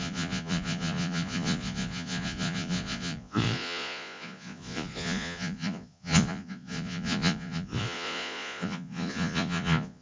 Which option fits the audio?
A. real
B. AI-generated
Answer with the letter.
B